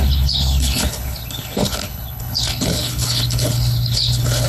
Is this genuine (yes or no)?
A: no